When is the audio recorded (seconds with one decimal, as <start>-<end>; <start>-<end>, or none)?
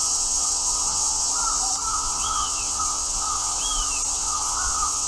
1.3-1.9; 3.6-4.1